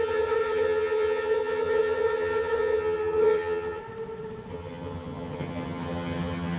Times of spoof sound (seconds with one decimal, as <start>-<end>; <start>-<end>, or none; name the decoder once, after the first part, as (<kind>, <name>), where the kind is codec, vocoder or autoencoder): 0.0-3.8 (vocoder, HiFi-GAN); 4.5-6.6